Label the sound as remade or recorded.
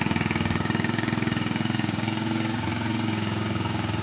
remade